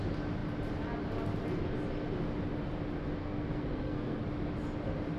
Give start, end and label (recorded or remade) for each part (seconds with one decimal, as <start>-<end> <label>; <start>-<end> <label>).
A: 0.0-3.2 recorded; 3.2-4.2 remade; 4.2-5.2 recorded